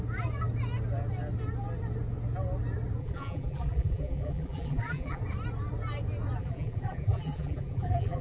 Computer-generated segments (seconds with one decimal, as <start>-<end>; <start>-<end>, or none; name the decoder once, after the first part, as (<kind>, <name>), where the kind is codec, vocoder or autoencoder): 3.0-5.2 (vocoder, BigVGAN v2); 6.4-8.2